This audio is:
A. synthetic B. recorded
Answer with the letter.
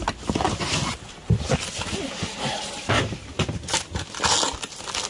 B